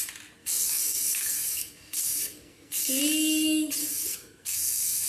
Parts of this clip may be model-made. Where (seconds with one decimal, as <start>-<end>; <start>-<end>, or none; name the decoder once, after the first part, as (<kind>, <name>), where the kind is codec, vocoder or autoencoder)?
0.4-3.0 (codec, SNAC); 3.8-5.1

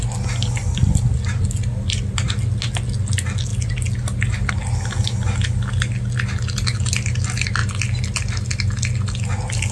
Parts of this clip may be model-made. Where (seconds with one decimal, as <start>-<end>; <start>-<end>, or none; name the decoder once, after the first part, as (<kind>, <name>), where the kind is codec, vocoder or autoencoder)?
none

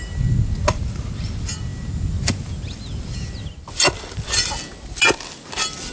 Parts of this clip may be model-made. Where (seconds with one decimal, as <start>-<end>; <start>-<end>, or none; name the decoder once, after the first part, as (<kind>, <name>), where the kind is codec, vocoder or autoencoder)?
none

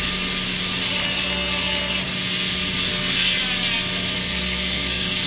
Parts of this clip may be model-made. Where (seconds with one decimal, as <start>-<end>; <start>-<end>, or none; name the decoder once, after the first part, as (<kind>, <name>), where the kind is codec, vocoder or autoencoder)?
1.0-2.0 (codec, SNAC); 2.9-3.4; 4.2-5.3

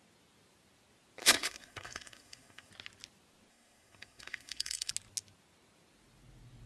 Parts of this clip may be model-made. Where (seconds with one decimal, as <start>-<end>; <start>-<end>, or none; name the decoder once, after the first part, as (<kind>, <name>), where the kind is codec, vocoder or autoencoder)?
1.2-2.7 (codec, SNAC); 3.5-4.9